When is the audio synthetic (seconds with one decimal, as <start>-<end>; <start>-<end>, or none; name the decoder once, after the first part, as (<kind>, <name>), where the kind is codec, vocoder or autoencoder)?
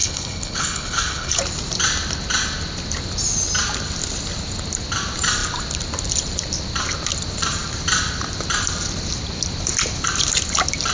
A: 0.0-1.4 (codec, HILCodec)